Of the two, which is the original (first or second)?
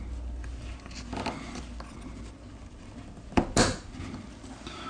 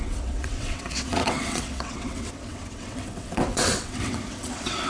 first